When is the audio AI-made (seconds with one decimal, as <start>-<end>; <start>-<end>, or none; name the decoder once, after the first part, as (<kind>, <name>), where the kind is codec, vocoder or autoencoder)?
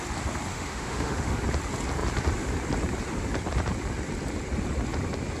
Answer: 0.5-1.4 (autoencoder, DAC-VAE)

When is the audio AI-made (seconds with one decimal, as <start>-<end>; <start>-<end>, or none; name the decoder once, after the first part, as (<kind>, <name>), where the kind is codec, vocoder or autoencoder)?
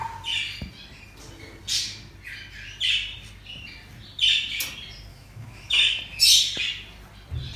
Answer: 5.1-6.0 (autoencoder, DAC-VAE)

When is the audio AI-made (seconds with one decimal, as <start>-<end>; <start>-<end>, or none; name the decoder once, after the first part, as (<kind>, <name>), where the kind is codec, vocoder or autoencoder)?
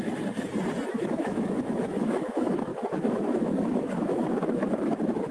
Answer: 0.9-5.3 (autoencoder, DAC-VAE)